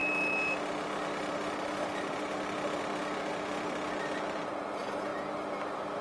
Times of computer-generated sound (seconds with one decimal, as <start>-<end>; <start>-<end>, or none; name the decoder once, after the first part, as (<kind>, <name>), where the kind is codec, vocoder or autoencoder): none